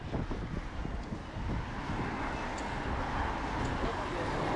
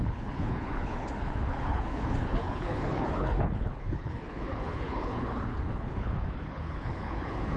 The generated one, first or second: second